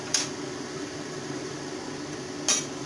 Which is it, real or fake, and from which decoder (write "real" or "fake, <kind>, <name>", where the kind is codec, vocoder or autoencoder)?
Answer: real